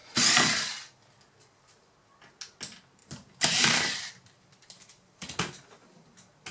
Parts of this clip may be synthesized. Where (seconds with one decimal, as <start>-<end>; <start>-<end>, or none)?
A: 3.0-4.1